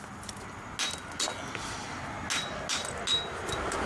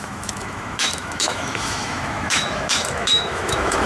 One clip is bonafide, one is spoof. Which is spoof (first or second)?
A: second